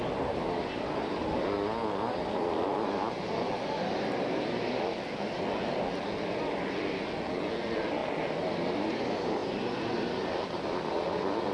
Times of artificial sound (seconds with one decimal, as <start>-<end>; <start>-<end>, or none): none